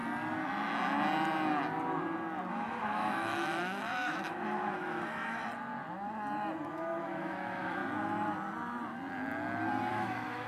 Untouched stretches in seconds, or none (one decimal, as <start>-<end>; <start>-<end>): 0.0-2.5; 5.4-6.7; 7.8-9.9